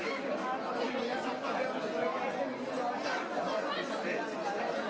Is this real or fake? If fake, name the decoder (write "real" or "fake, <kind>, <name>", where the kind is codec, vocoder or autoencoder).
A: real